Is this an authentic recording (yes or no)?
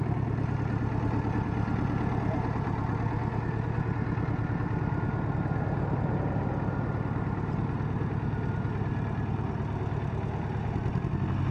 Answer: yes